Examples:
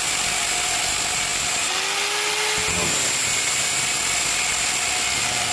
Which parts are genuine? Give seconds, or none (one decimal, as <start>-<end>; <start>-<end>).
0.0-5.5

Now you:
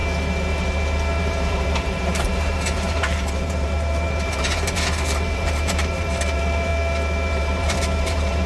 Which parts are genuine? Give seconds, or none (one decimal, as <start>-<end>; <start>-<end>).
0.0-1.2; 6.7-7.3

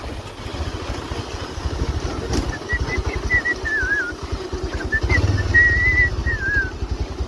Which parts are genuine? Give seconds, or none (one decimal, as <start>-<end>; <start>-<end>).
0.0-6.2

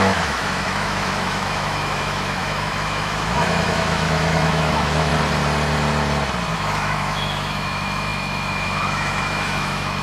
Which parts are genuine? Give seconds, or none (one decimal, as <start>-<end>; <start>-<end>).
5.1-6.5